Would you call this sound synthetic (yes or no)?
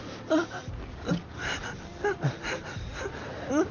no